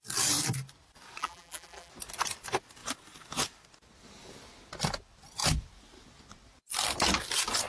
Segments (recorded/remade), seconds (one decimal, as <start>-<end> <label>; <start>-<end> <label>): 0.0-1.2 recorded; 1.2-1.9 remade; 1.9-7.7 recorded